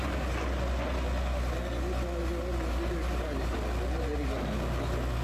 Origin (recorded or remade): recorded